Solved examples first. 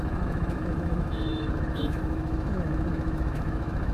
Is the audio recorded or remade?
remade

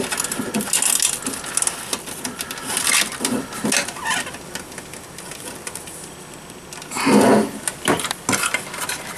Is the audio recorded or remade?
recorded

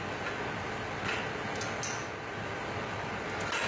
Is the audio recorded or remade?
recorded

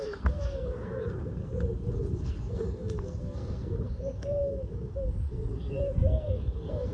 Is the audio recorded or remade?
remade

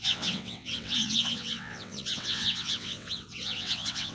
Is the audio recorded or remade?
remade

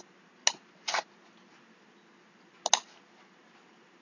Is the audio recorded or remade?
recorded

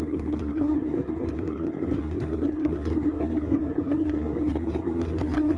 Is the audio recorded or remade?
remade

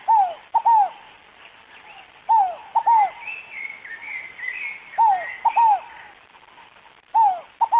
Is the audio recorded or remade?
recorded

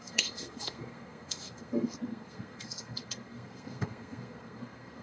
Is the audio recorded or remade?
remade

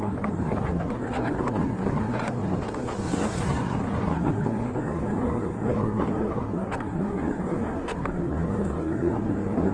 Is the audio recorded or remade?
remade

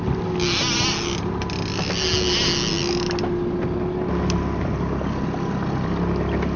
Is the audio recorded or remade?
recorded